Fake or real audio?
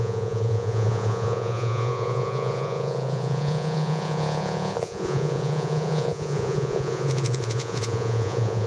fake